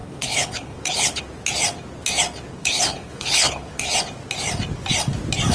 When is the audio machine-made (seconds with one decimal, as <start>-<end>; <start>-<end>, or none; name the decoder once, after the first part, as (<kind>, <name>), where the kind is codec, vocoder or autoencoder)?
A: 0.0-1.2 (codec, HILCodec); 2.5-4.0

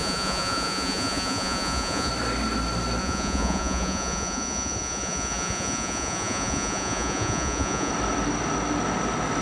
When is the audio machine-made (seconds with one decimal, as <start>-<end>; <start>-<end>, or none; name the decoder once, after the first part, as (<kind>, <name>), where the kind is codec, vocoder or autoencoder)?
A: 0.0-2.1 (vocoder, Vocos); 3.0-7.9